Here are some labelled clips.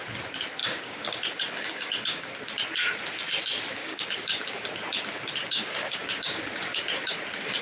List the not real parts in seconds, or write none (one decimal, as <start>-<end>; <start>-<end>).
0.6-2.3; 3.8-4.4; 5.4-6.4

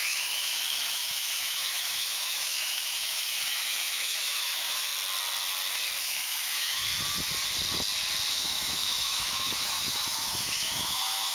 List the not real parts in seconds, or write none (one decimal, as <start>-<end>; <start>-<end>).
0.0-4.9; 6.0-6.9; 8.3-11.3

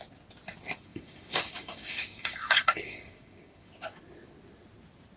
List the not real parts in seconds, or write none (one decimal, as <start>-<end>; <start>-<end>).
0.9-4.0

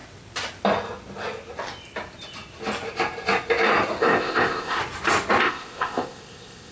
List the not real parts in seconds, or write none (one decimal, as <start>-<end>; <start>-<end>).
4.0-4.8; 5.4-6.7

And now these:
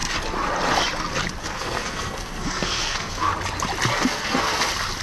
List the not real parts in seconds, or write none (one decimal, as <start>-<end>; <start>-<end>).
1.4-3.3; 3.9-4.6

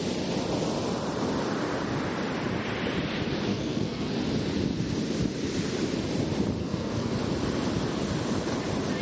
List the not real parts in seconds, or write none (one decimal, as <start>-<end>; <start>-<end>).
3.5-4.1; 6.6-7.1

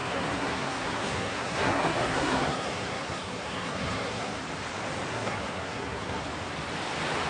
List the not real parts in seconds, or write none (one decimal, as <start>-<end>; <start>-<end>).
0.0-4.4; 5.1-6.2

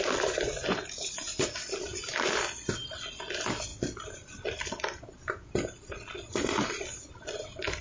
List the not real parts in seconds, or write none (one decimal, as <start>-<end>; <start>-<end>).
none